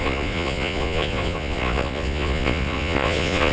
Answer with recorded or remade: remade